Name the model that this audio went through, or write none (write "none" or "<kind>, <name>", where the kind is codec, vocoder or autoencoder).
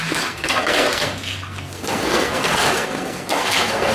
codec, SNAC